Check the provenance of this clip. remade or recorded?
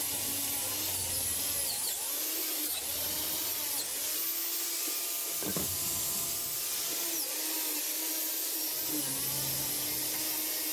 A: recorded